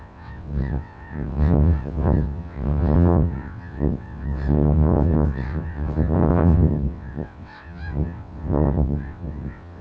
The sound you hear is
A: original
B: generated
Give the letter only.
B